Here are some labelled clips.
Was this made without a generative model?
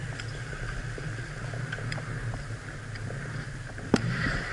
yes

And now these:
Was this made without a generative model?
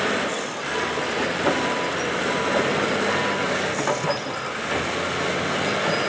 yes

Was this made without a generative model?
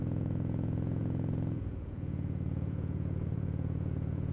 no